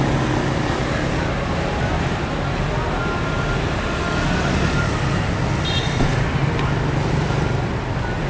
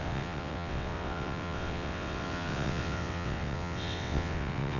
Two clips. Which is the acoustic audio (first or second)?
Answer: first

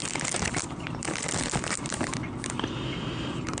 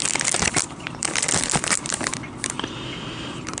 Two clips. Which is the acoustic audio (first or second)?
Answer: first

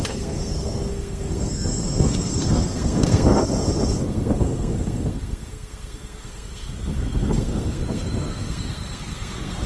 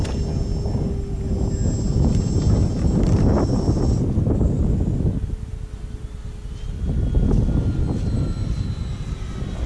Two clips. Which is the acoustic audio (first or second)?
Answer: second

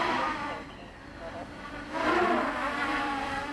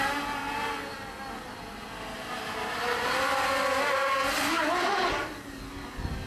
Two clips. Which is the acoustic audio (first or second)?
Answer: second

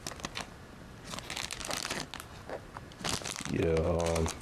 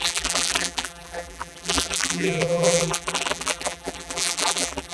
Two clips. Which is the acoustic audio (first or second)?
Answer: first